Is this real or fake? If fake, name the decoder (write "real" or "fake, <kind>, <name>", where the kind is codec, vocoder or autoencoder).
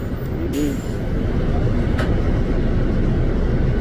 real